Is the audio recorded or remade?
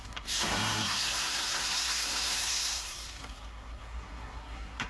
remade